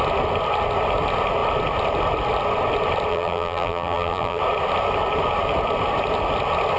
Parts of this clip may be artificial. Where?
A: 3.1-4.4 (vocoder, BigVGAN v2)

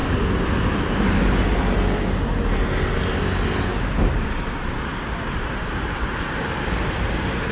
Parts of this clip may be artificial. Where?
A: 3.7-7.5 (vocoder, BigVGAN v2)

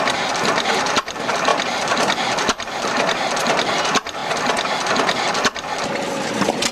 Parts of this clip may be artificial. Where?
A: 0.0-4.2 (vocoder, BigVGAN v2); 5.2-6.7

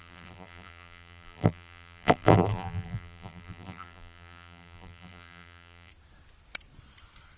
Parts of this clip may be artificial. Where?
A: 0.0-5.9 (vocoder, BigVGAN v2)

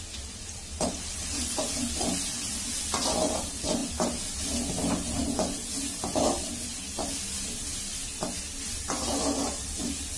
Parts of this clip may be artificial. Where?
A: none